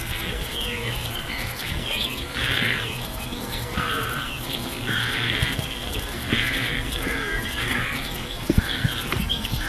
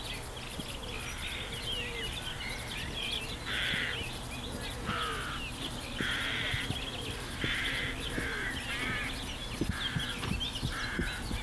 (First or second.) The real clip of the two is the second